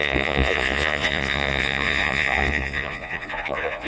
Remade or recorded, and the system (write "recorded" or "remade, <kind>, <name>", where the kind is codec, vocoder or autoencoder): remade, vocoder, Vocos